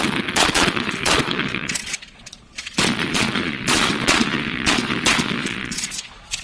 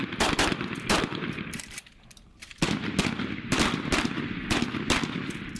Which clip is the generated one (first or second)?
first